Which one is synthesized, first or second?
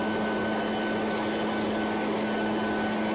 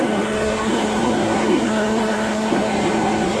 second